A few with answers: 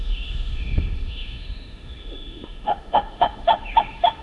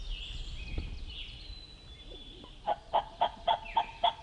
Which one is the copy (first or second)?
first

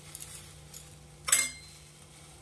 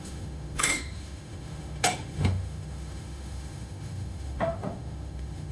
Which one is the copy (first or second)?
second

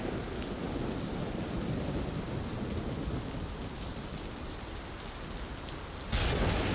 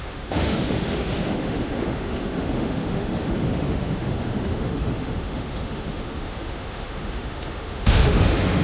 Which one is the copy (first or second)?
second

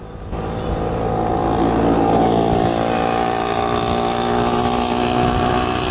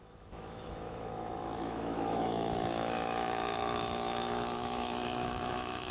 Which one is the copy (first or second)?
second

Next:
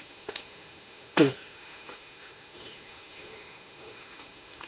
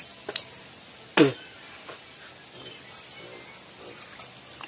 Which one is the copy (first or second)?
first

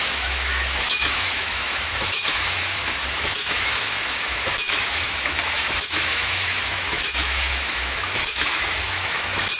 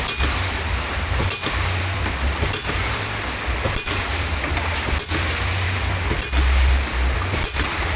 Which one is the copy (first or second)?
first